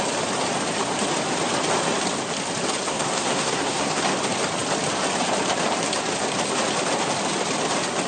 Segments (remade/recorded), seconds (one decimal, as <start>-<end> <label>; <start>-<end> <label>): 0.0-2.9 recorded; 2.9-4.0 remade; 4.0-8.1 recorded